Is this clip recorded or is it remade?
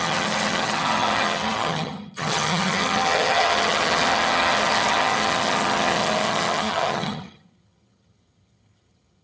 remade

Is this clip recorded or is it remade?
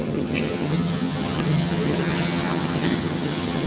remade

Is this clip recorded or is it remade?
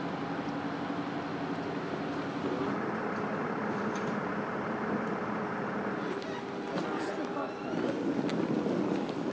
recorded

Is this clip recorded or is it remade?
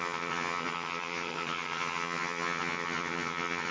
remade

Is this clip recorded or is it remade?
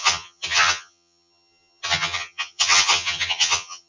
remade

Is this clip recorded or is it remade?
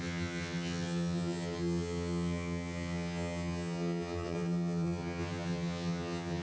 remade